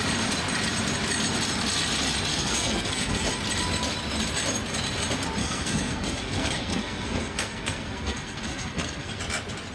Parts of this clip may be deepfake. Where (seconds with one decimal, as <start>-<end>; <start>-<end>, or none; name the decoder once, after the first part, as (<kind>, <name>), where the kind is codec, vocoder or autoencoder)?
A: 2.3-3.3 (codec, SNAC); 5.4-9.2